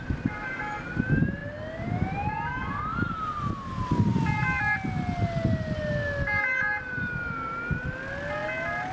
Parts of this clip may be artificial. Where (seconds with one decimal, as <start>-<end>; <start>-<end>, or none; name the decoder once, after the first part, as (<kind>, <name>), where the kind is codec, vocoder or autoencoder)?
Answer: none